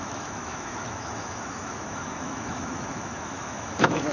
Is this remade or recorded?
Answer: remade